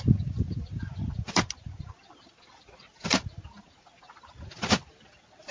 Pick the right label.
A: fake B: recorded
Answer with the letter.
B